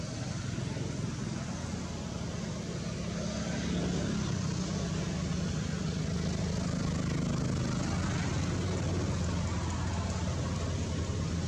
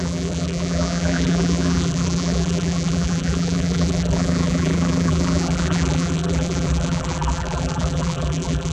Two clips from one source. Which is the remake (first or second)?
second